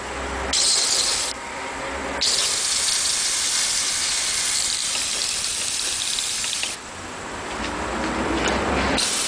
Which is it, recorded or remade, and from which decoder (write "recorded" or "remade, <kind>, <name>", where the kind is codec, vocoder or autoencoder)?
recorded